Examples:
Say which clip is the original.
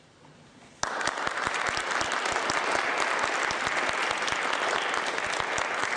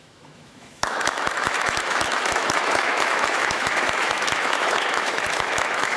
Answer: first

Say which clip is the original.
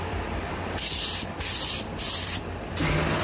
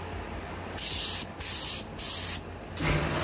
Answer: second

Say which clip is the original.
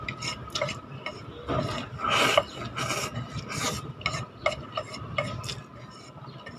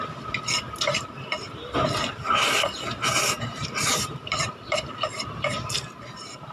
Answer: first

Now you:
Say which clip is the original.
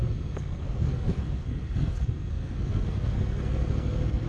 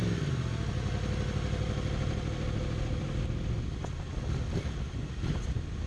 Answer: second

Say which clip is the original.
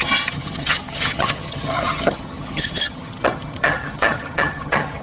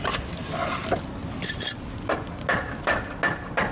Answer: second